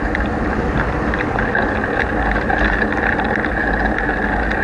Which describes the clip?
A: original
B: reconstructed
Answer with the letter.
A